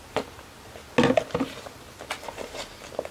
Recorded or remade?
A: recorded